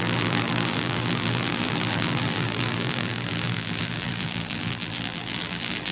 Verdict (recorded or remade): remade